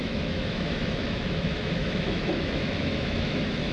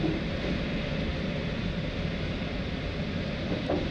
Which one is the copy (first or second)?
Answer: first